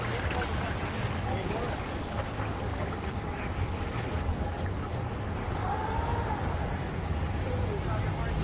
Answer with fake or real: real